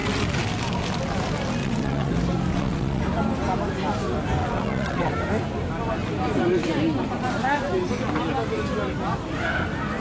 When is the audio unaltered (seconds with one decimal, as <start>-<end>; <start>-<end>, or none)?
0.0-1.6; 2.1-2.5; 3.0-4.4; 5.1-10.0